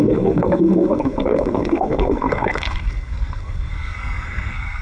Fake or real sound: fake